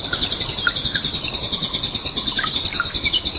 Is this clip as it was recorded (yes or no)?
yes